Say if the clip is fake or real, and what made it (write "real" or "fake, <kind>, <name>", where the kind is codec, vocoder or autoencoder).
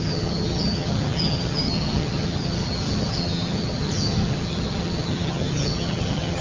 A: fake, vocoder, HiFi-GAN